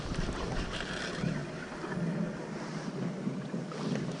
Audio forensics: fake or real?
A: real